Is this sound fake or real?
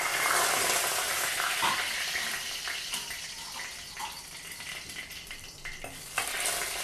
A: real